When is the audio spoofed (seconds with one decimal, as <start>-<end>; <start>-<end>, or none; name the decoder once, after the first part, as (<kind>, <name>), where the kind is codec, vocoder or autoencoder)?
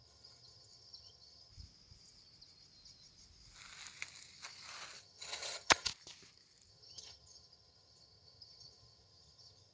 0.0-1.5 (vocoder, HiFi-GAN); 5.0-5.9; 6.7-9.7